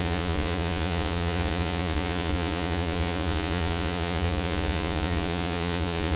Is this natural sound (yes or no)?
no